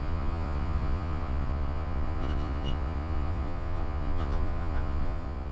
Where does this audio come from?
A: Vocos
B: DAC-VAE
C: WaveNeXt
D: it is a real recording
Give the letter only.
A